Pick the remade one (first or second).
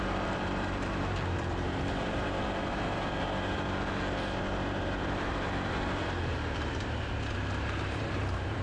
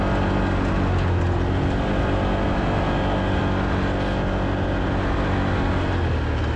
first